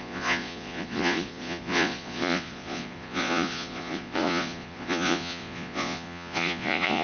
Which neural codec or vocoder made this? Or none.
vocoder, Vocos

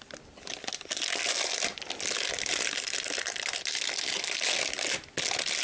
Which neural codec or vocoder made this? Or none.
none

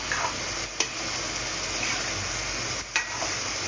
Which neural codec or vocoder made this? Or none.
none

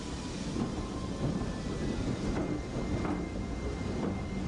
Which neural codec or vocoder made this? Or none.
none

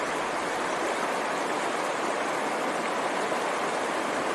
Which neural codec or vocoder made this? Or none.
none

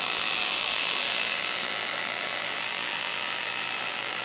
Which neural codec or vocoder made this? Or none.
vocoder, BigVGAN v2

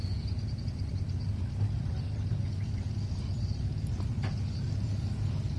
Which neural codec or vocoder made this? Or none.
none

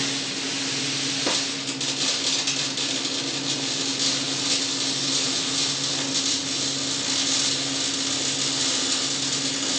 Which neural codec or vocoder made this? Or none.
none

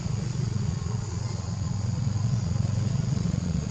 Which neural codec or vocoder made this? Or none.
vocoder, Vocos